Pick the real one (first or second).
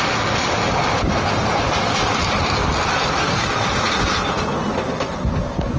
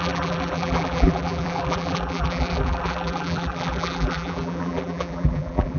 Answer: first